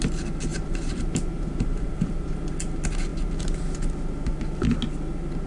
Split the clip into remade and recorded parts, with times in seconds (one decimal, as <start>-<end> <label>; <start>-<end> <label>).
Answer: 0.0-0.5 recorded; 0.5-2.3 remade; 2.3-5.5 recorded